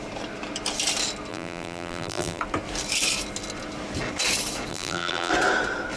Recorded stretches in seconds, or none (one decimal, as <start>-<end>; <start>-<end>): 0.0-1.3; 2.4-4.7; 5.3-6.0